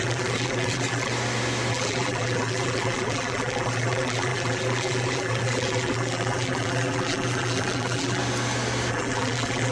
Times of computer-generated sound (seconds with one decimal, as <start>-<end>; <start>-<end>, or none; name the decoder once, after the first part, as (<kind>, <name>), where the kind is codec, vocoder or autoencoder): 0.0-1.1 (vocoder, BigVGAN v2); 1.7-8.2; 8.9-9.7